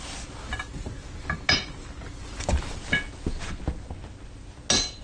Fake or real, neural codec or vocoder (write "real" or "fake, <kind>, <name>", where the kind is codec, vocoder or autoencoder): real